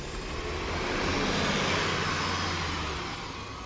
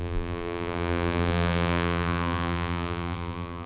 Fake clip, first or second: second